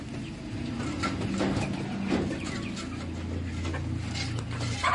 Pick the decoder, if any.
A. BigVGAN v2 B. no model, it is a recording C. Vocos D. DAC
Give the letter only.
B